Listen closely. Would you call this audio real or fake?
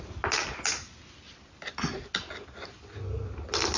real